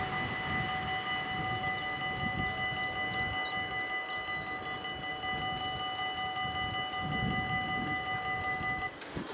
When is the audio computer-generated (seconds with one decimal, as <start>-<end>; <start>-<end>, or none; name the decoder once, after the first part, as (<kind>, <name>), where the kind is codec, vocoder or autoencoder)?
none